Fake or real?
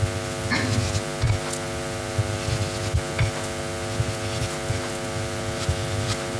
real